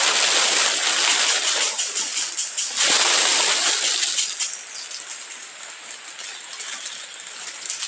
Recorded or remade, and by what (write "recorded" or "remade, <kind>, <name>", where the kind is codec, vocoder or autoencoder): recorded